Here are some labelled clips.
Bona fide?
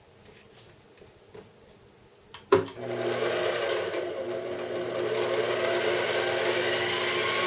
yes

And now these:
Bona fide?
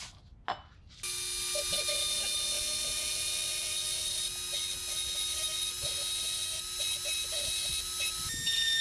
yes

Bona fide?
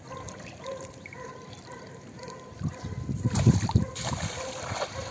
no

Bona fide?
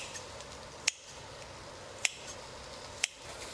yes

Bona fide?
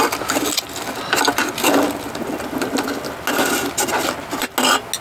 yes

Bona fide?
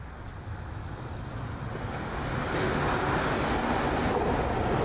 yes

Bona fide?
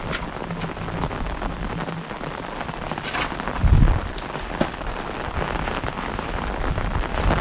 yes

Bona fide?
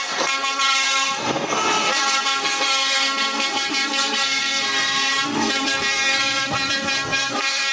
no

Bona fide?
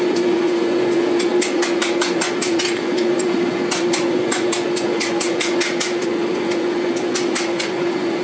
no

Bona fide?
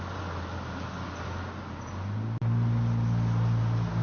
yes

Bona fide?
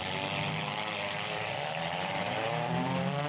no